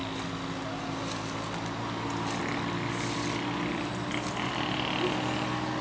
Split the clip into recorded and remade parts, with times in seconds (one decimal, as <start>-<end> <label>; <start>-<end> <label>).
0.0-5.8 recorded